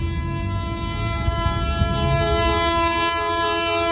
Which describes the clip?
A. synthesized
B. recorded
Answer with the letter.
B